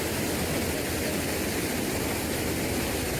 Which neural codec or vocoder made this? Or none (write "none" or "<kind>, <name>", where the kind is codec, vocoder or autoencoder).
none